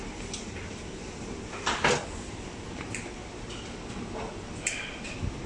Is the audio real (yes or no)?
yes